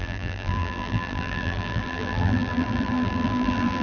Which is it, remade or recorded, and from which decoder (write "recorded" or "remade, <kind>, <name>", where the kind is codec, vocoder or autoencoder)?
remade, vocoder, BigVGAN v2